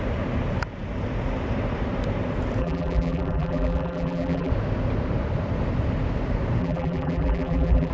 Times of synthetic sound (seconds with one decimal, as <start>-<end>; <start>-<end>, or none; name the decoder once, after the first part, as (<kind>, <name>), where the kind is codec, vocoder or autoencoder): 2.6-4.5 (vocoder, BigVGAN v2); 6.6-7.9